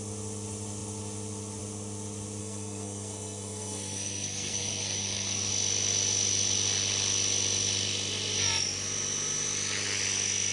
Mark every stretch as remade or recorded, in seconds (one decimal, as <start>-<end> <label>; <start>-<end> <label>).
0.0-2.4 recorded; 2.4-5.5 remade; 5.5-10.5 recorded